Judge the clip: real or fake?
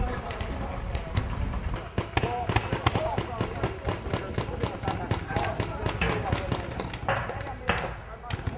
real